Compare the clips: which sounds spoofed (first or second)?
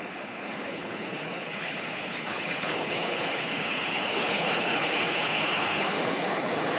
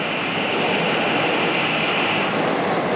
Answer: first